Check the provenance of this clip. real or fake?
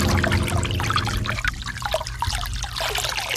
real